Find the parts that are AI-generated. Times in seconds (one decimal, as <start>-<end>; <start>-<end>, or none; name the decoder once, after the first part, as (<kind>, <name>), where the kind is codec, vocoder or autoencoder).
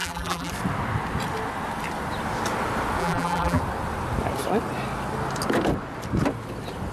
0.0-0.5 (vocoder, BigVGAN v2); 3.0-3.6